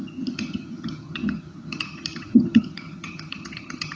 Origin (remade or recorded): remade